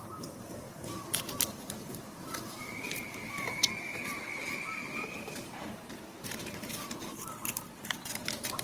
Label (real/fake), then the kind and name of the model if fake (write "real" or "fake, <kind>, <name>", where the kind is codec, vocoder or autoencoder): fake, vocoder, BigVGAN v2